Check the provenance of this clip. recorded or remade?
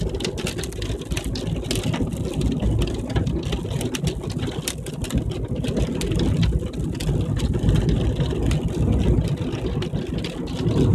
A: recorded